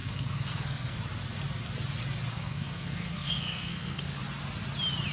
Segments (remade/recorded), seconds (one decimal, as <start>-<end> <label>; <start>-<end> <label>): 0.0-1.0 remade; 1.0-2.3 recorded; 2.3-4.2 remade; 4.2-5.1 recorded